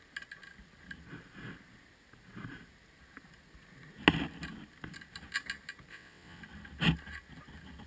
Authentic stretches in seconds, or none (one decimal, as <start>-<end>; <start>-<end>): 0.0-5.9; 6.4-7.9